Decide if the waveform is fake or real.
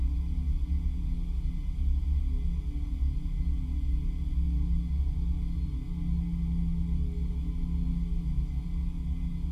real